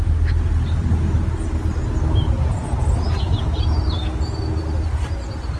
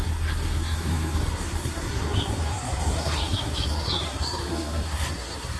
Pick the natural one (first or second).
first